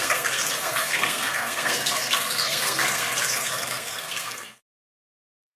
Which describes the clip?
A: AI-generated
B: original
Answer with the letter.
A